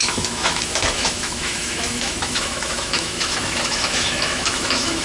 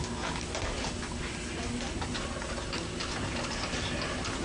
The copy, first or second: first